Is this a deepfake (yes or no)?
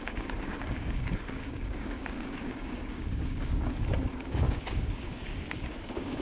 yes